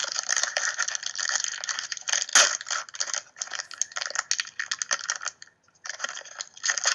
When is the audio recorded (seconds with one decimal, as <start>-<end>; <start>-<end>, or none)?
0.6-6.9